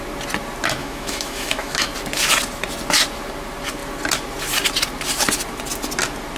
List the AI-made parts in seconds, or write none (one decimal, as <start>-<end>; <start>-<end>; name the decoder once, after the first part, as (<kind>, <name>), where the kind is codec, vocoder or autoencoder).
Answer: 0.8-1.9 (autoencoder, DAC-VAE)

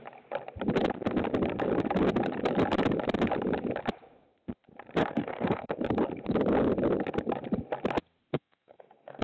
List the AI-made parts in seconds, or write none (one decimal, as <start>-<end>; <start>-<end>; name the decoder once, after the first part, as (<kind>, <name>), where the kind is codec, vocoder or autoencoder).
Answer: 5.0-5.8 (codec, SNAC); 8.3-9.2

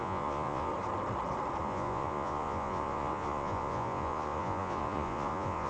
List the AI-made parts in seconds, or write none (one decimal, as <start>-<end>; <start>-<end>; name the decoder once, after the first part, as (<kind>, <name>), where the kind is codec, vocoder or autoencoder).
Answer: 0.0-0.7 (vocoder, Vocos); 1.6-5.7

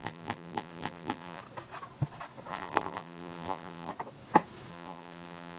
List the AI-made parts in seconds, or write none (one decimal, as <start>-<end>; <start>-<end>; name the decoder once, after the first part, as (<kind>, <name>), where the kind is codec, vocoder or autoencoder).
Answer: 0.0-1.4 (vocoder, BigVGAN v2); 2.5-3.9; 4.7-5.6